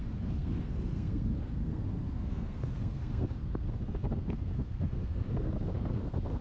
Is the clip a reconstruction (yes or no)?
yes